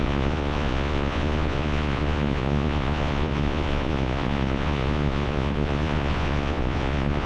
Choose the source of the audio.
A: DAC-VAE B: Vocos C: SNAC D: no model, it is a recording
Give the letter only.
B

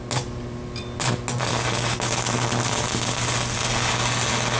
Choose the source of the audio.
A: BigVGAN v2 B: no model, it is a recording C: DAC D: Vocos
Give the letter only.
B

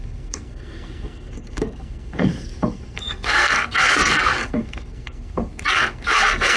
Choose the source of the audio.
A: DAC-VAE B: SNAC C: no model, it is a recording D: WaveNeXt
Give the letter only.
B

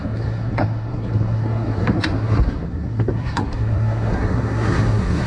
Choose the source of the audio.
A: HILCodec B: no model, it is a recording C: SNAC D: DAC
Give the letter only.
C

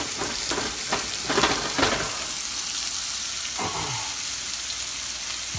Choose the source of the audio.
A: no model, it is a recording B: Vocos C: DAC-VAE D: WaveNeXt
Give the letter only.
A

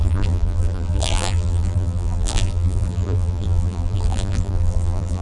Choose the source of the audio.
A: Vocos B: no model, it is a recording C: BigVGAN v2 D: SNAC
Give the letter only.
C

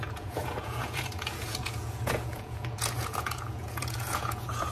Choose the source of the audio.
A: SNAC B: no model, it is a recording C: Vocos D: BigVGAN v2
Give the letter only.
C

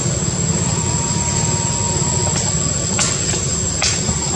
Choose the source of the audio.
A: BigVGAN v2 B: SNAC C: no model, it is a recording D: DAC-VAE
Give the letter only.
C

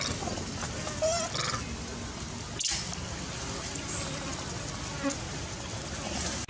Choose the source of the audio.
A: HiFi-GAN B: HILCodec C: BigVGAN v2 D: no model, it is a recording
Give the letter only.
D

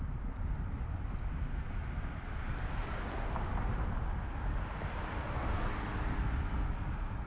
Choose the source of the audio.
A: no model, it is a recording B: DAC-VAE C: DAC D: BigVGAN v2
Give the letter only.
A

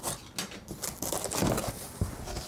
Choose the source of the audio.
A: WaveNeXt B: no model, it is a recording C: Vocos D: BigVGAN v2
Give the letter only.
B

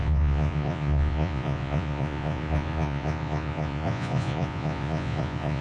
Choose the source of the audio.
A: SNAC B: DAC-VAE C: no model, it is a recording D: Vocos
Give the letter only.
D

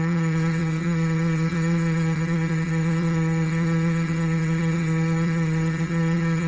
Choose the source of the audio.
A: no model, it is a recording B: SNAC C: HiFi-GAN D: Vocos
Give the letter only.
C